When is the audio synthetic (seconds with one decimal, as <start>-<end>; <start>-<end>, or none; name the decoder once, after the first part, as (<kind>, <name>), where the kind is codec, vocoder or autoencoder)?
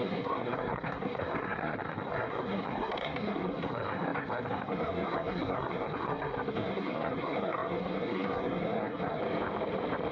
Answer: 0.0-9.2 (codec, SNAC)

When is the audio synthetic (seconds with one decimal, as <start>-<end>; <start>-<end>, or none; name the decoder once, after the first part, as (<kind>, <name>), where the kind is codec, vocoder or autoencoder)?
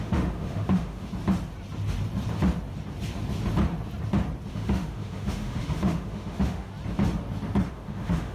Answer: 0.0-1.1 (autoencoder, DAC-VAE); 4.5-6.7; 7.7-8.3